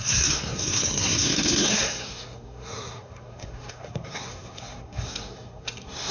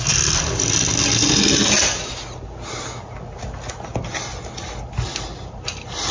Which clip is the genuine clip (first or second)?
second